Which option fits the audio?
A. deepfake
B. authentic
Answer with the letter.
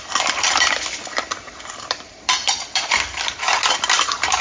A